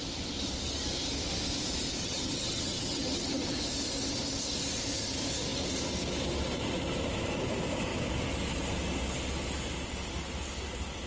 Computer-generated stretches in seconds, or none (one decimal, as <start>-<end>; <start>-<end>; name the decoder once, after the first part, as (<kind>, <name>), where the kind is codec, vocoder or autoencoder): 2.0-3.6 (vocoder, HiFi-GAN)